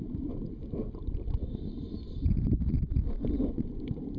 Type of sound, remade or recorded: remade